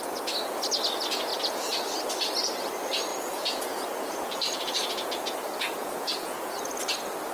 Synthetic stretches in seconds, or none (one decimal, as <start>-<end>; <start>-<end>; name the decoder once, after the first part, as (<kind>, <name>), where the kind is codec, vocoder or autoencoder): 3.1-6.5 (vocoder, Vocos)